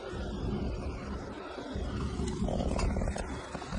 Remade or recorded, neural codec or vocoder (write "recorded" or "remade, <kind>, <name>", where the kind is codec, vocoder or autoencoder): recorded